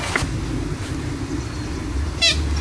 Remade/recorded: recorded